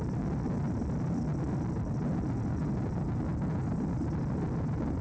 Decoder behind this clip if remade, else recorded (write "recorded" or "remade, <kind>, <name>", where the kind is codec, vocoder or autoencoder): recorded